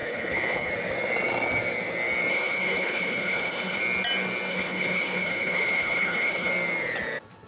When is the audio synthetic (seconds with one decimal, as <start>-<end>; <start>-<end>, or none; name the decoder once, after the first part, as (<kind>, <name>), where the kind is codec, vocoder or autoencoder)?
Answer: 0.0-0.7 (codec, HILCodec); 2.3-3.8; 4.5-6.5